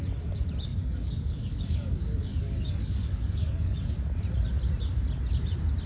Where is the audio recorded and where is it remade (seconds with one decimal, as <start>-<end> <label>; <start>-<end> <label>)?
0.0-0.7 recorded; 0.7-3.9 remade; 3.9-5.9 recorded